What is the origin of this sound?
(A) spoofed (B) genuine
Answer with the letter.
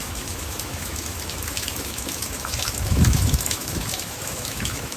A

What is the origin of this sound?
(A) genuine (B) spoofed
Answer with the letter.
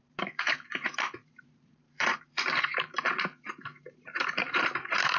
B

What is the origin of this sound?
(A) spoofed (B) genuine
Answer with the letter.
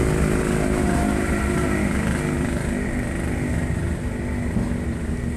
B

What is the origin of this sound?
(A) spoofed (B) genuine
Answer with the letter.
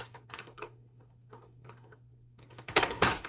A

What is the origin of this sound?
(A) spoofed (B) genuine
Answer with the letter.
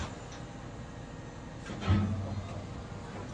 B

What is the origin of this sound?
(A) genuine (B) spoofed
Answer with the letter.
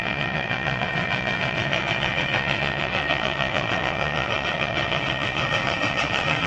B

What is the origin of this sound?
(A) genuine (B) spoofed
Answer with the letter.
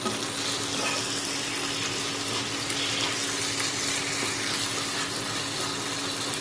A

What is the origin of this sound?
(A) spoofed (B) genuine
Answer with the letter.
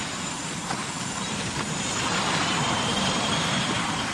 A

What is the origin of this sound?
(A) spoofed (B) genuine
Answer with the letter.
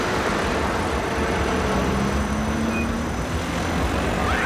B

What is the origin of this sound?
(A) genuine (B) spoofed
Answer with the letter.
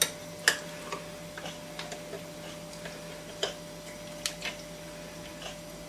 A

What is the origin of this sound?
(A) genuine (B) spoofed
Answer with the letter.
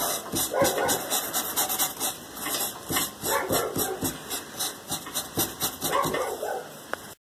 A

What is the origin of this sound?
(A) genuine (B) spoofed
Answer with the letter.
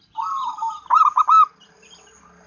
A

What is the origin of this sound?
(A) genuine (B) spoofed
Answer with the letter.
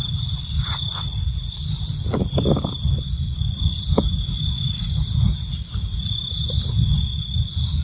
A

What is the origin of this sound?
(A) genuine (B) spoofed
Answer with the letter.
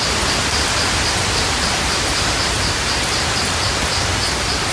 B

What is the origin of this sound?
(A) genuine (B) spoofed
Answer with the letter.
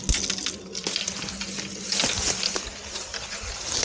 A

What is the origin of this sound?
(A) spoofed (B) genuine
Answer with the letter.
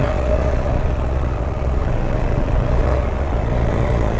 A